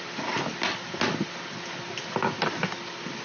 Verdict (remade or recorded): recorded